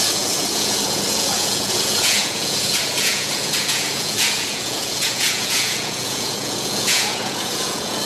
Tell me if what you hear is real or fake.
fake